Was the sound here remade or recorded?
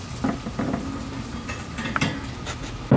recorded